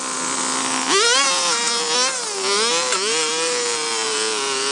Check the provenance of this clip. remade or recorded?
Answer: recorded